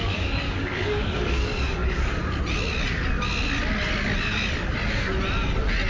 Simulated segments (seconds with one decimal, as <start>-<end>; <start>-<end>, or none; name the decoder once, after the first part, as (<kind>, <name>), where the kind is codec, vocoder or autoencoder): 0.0-2.2 (codec, DAC)